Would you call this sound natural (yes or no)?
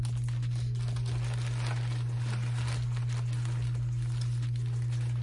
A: yes